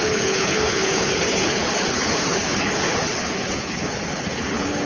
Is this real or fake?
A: fake